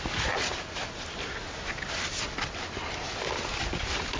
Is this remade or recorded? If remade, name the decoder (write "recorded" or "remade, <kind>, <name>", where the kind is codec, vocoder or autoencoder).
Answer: recorded